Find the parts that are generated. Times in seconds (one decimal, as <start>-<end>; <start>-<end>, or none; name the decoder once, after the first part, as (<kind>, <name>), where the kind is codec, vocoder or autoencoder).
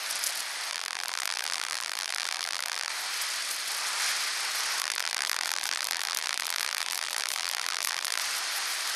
0.7-2.9 (vocoder, BigVGAN v2); 4.8-8.2